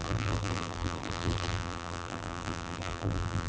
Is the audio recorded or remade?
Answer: remade